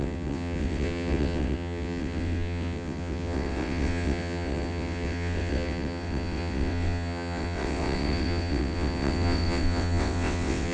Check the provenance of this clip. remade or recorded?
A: remade